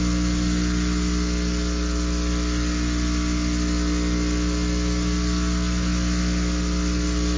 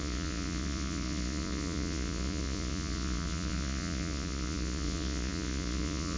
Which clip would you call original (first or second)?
first